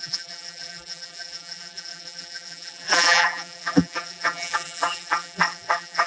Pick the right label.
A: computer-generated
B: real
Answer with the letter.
A